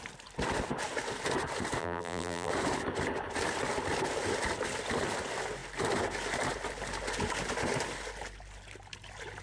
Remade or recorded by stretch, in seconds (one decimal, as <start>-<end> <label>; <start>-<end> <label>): 0.0-1.8 recorded; 1.8-2.5 remade; 2.5-9.4 recorded